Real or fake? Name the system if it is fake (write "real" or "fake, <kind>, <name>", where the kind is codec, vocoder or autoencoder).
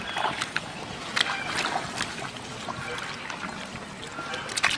fake, vocoder, BigVGAN v2